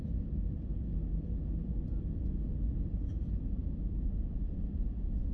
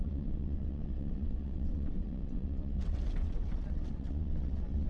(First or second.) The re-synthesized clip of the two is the second